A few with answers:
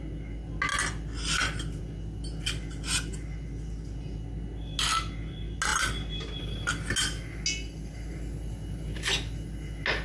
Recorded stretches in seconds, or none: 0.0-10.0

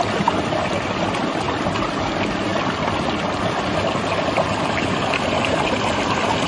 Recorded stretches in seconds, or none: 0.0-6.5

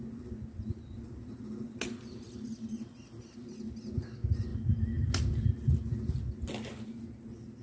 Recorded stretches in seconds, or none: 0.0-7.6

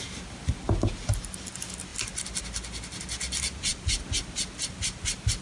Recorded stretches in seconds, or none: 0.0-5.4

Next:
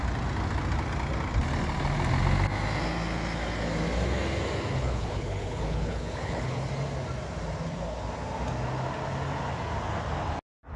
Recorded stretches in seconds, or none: 0.0-4.7; 6.7-10.8

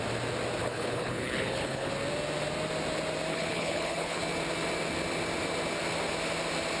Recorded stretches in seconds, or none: 0.0-0.6; 1.9-3.3; 4.2-6.8

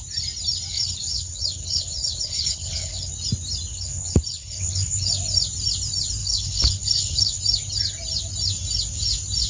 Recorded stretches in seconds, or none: 0.0-0.7; 3.1-3.7; 5.1-6.2; 7.4-9.5

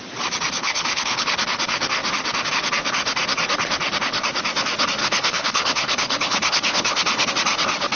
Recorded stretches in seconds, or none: 0.0-0.6; 1.3-5.0; 7.3-8.0